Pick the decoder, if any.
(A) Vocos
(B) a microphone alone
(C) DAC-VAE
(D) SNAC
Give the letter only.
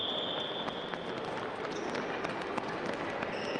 B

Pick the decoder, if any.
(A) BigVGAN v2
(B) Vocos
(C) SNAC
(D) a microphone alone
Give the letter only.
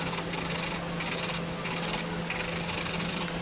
D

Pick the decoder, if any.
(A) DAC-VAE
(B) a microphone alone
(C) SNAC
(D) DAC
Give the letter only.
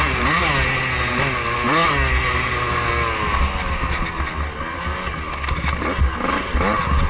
B